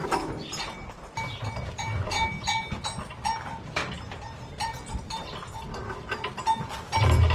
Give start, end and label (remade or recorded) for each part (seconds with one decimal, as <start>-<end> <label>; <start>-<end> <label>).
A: 0.0-7.3 recorded